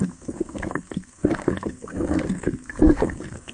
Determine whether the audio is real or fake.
fake